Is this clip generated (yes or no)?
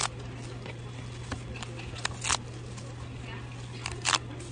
no